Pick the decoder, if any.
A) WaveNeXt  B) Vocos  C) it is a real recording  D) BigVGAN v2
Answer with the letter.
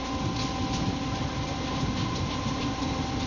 C